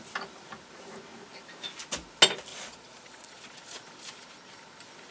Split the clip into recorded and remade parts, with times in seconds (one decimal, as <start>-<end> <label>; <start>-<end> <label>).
0.0-2.5 recorded; 2.5-3.8 remade; 3.8-5.1 recorded